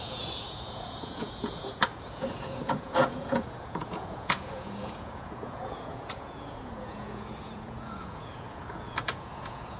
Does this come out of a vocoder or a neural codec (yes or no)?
yes